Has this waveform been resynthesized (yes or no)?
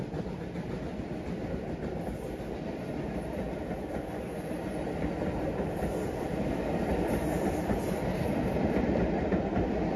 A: no